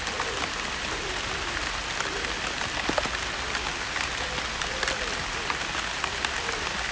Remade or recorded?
recorded